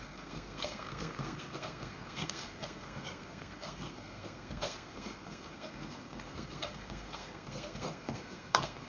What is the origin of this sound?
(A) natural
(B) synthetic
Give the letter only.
B